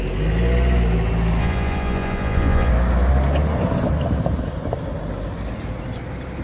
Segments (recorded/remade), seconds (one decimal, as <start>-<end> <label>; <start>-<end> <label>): 0.0-1.4 recorded; 1.4-2.7 remade; 2.7-6.4 recorded